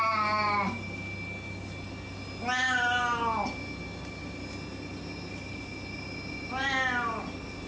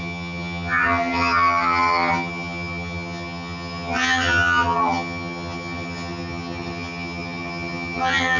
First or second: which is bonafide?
first